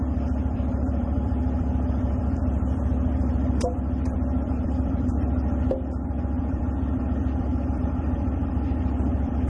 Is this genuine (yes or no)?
no